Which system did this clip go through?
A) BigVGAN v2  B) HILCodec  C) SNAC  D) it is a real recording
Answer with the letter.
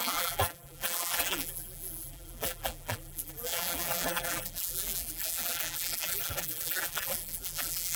A